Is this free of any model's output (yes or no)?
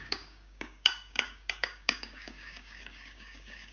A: no